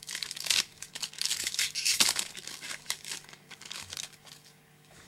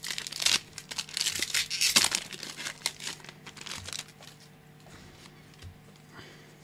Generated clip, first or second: first